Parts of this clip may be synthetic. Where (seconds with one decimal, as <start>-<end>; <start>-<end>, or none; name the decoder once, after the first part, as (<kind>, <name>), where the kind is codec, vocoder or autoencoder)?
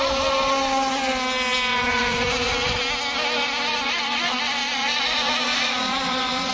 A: 1.7-2.8 (vocoder, Vocos); 3.7-6.5